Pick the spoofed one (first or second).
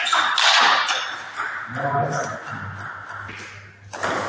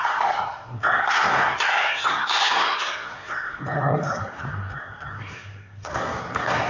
second